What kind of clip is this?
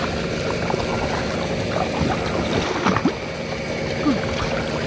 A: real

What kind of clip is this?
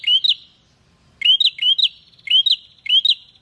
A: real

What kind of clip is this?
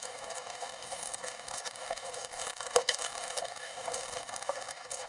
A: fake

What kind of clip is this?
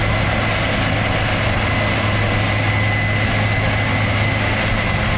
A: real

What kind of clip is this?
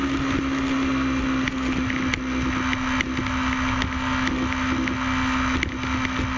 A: real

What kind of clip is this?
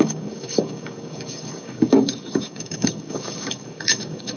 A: fake